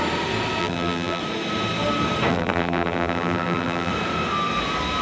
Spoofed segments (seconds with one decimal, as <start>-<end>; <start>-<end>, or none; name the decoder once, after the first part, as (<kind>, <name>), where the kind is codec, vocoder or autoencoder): 0.6-1.2 (vocoder, BigVGAN v2); 2.3-3.9